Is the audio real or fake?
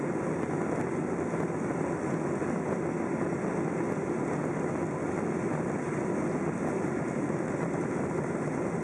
real